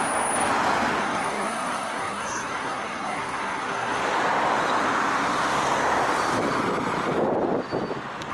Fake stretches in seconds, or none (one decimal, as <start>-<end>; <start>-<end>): 1.0-4.0